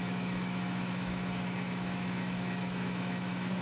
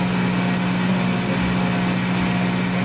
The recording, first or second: second